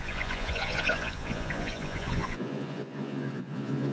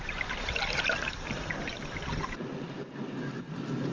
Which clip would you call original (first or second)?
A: second